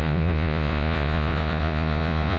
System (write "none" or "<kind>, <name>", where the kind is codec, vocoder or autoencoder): vocoder, Vocos